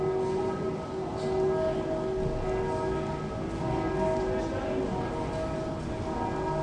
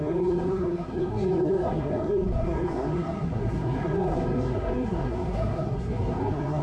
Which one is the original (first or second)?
first